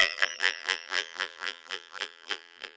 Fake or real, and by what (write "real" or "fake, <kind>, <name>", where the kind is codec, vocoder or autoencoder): fake, vocoder, BigVGAN v2